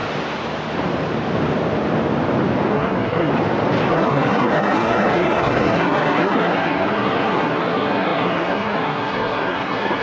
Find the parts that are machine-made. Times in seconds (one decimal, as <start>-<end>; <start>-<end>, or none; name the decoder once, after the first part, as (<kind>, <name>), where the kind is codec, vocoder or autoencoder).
2.7-3.3 (codec, SNAC); 3.9-10.0